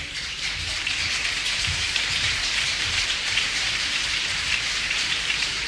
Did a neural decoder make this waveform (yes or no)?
yes